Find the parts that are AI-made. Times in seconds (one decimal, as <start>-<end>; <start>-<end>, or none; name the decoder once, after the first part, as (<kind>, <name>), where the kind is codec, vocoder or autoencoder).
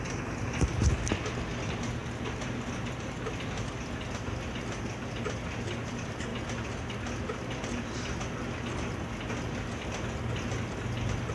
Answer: none